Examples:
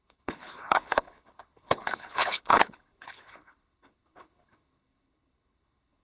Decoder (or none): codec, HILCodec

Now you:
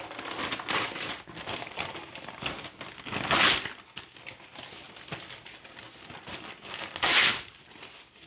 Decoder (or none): none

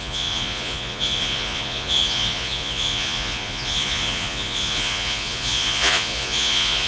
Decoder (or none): vocoder, Vocos